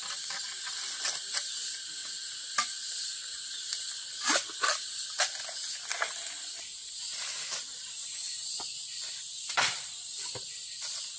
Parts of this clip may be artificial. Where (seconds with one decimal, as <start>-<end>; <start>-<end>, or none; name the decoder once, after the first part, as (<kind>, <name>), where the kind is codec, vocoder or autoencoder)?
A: none